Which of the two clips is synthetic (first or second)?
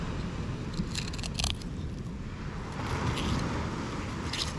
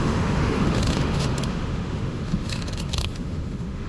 second